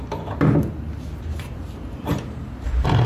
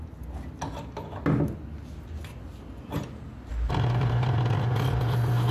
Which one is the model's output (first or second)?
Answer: first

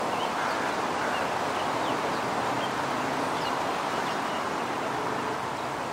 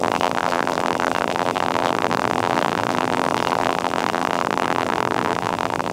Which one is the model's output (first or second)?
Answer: second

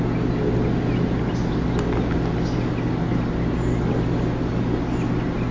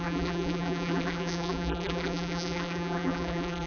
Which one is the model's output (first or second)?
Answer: second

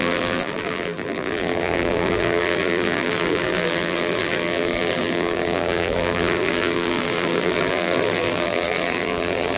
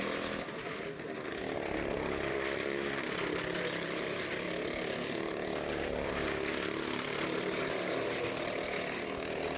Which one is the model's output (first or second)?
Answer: first